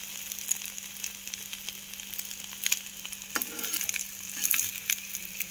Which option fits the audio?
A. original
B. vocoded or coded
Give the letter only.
A